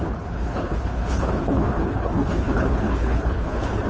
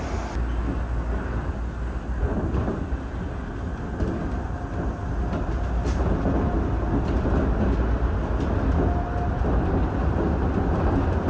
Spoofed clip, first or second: first